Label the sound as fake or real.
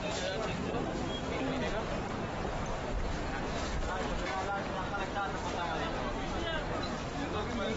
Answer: real